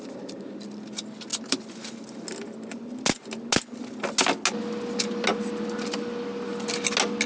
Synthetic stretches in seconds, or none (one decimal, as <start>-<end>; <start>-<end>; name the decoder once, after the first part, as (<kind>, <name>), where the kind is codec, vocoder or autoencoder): none